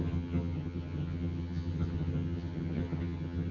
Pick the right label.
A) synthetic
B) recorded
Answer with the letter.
A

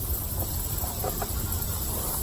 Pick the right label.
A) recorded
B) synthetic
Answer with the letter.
B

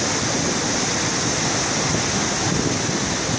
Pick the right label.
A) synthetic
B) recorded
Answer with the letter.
B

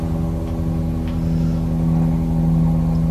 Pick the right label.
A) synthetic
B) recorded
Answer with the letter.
B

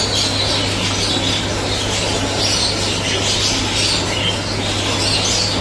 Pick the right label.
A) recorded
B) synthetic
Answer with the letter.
A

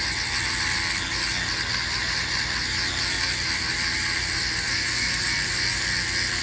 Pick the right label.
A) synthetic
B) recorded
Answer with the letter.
B